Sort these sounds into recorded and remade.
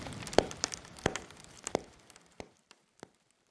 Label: remade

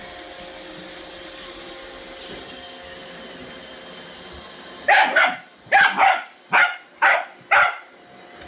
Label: recorded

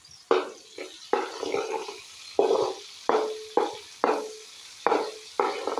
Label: recorded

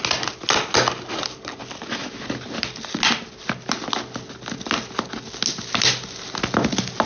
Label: recorded